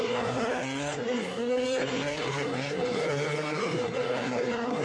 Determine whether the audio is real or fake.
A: fake